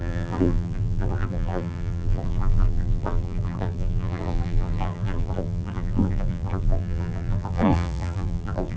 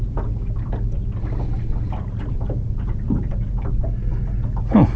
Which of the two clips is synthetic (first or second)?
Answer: first